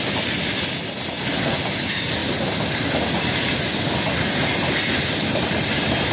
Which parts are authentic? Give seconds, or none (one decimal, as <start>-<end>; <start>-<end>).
0.0-6.1